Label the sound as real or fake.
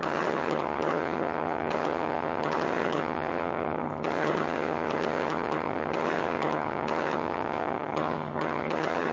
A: fake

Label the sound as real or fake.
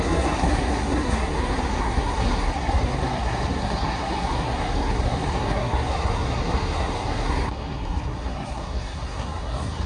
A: fake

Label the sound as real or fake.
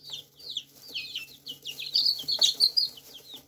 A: real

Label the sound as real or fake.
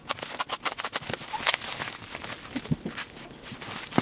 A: fake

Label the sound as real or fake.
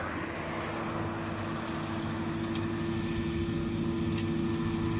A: real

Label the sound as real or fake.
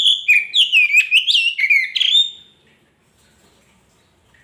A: real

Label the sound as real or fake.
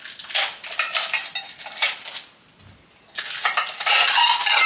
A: real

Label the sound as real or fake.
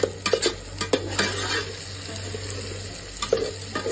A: real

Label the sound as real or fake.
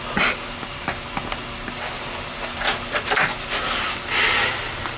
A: real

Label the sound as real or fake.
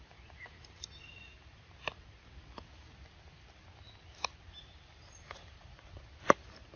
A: real